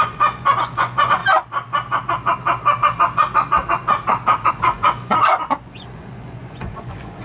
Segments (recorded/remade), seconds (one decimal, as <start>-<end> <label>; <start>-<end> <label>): 0.0-1.2 remade; 1.2-4.5 recorded; 4.5-7.2 remade